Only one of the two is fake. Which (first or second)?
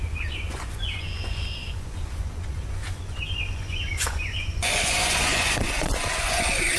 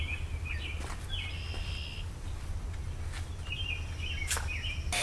first